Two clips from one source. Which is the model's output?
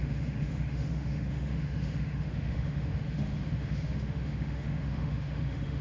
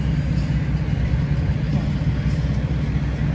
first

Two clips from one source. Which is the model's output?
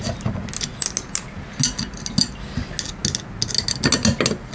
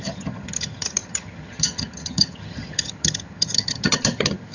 second